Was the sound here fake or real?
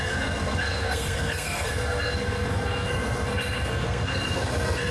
fake